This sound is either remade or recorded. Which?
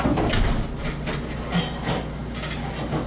recorded